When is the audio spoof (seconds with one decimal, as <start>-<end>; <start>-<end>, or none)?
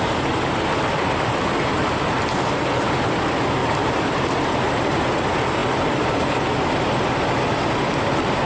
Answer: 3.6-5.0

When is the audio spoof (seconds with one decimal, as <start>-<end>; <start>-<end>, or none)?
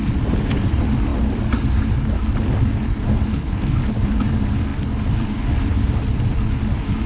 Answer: 4.7-6.5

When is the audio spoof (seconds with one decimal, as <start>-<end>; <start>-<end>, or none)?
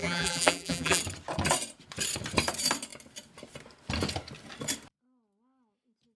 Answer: 0.0-1.0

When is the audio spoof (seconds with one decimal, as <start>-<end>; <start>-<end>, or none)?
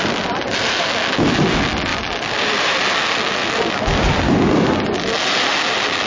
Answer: 1.9-2.8; 3.4-4.5